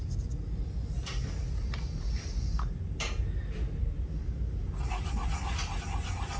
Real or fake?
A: real